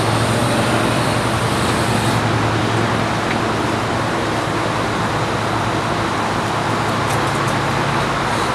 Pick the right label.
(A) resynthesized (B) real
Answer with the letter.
B